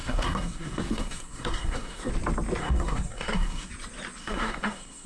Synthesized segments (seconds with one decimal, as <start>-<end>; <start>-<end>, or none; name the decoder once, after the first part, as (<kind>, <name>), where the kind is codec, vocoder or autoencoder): 0.0-2.1 (codec, SNAC); 2.6-3.7; 4.2-5.1